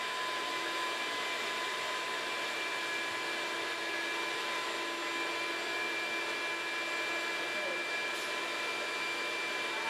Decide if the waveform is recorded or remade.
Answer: recorded